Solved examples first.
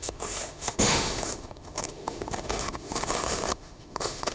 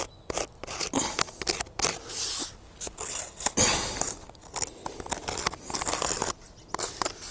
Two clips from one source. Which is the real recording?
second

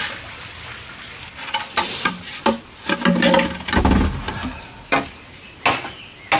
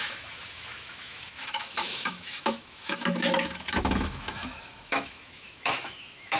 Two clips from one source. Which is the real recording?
first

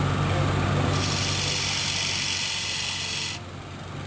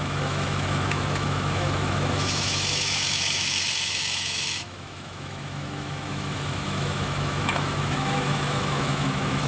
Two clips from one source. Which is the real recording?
first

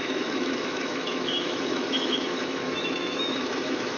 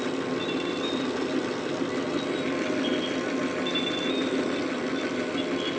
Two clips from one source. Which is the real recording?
second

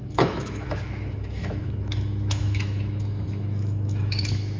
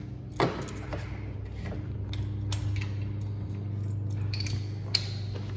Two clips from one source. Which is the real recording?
second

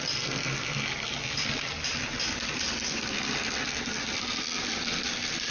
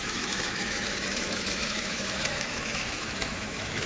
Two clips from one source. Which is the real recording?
first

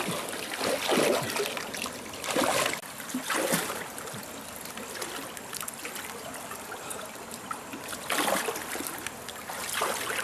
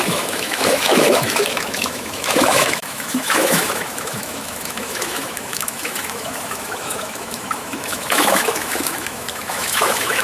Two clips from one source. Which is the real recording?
first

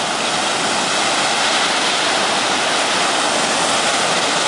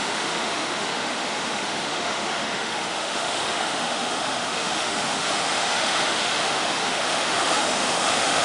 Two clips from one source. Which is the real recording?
first